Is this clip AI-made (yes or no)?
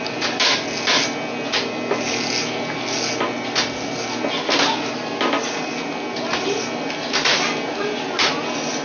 no